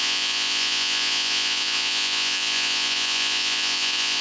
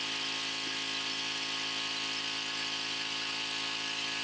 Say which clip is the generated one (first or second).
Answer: first